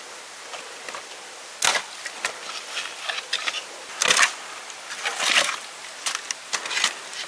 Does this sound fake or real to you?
real